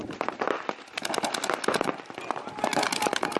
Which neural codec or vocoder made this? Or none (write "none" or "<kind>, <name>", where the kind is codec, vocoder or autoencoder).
none